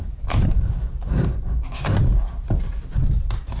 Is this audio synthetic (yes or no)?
no